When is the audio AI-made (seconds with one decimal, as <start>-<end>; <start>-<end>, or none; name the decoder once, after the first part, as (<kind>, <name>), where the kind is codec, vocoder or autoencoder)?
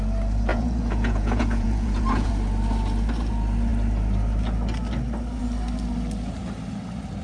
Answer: 0.5-2.3 (vocoder, Vocos)